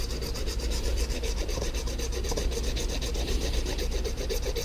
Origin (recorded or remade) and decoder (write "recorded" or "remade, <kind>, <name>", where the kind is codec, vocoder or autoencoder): recorded